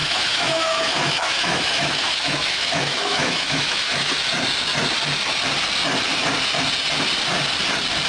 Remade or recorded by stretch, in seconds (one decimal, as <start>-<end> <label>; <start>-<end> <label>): 0.0-4.1 remade; 4.1-8.1 recorded